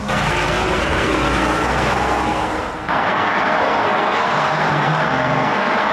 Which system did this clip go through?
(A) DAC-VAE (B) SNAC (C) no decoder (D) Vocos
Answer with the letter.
B